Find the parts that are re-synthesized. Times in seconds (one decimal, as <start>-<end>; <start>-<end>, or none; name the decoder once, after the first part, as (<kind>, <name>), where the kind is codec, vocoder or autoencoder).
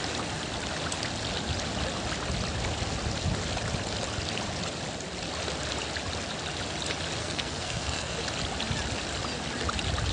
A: 7.2-8.2 (codec, SNAC)